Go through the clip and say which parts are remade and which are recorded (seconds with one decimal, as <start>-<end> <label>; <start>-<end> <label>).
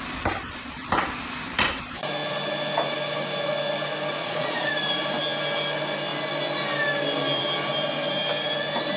0.0-4.2 recorded; 4.2-4.7 remade; 4.7-9.0 recorded